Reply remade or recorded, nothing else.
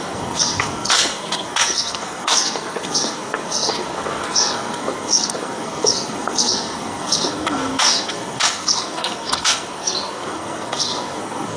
remade